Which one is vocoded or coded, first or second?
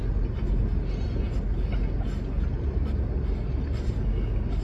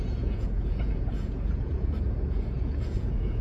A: second